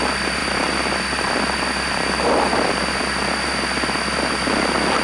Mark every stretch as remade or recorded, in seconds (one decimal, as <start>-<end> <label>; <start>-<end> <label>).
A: 0.0-5.0 recorded